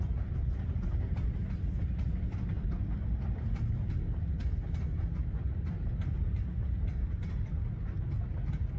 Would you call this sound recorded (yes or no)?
yes